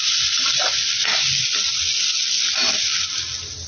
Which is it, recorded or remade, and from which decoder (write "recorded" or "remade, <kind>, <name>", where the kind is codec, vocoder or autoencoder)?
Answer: recorded